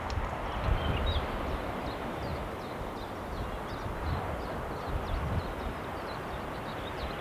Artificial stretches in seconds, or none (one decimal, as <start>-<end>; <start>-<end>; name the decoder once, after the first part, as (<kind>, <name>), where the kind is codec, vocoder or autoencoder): none